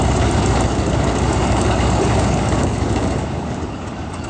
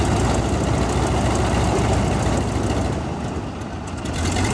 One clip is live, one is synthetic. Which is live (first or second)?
second